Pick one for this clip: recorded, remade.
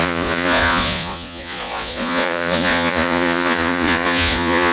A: remade